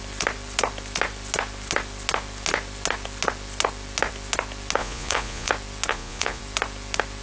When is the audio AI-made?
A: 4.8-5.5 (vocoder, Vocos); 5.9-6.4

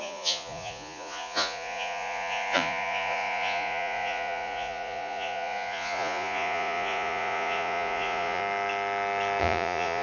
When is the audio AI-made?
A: 0.0-8.4 (vocoder, Vocos); 9.4-10.0

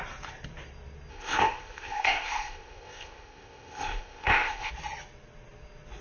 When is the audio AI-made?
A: 1.1-4.7 (codec, ZipCodec)

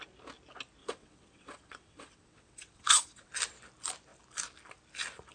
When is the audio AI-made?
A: 0.8-3.3 (vocoder, WaveNeXt)

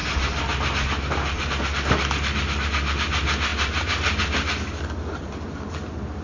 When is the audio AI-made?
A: none

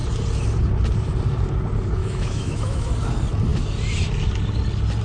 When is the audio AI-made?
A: 2.0-2.9 (autoencoder, DAC-VAE)

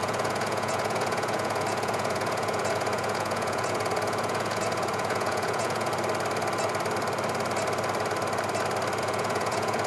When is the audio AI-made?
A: 0.0-5.9 (vocoder, Vocos); 9.0-9.9

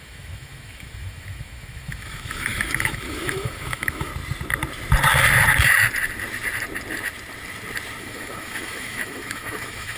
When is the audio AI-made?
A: 0.0-4.1 (autoencoder, DAC-VAE); 8.0-10.0